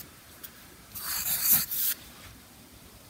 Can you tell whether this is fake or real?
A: fake